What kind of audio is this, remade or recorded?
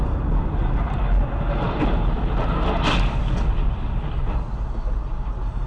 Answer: recorded